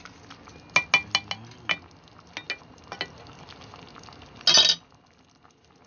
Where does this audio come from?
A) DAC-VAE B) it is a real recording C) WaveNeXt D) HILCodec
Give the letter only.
B